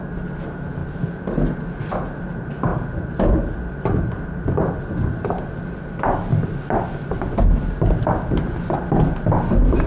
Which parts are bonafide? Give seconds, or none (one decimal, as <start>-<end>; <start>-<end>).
0.0-9.9